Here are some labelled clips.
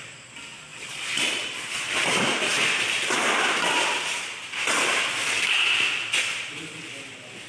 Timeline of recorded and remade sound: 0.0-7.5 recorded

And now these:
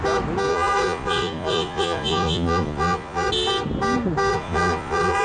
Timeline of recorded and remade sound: 0.0-0.5 recorded; 0.5-3.3 remade; 3.3-4.3 recorded; 4.3-5.2 remade